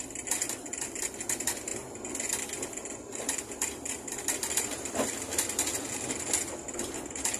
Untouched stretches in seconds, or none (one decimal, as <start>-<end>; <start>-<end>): 0.0-7.4